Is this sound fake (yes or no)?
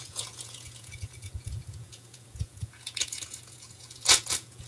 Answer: yes